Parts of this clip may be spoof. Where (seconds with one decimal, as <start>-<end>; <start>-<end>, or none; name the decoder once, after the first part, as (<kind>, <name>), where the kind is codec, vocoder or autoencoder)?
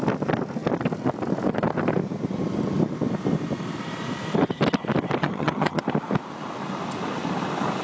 5.2-5.8 (vocoder, HiFi-GAN)